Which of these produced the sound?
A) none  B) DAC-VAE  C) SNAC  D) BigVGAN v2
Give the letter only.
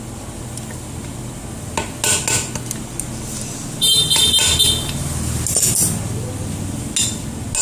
A